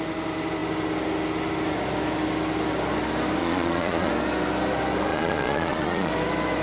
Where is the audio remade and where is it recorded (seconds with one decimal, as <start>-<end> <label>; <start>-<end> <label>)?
0.0-3.4 recorded; 3.4-4.1 remade; 4.1-5.1 recorded; 5.1-6.1 remade; 6.1-6.6 recorded